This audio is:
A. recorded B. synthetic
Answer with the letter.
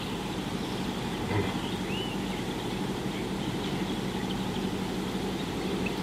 A